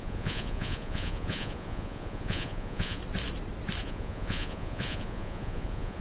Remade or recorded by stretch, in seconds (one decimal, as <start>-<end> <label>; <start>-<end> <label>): 0.0-3.0 remade; 3.0-3.8 recorded; 3.8-6.0 remade